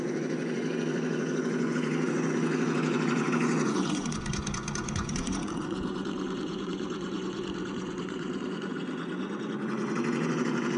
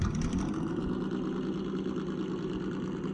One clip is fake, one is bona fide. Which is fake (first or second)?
first